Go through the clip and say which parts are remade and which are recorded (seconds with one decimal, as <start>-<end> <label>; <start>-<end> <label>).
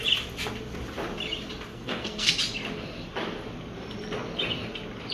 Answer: 0.0-1.7 recorded; 1.7-2.3 remade; 2.3-5.1 recorded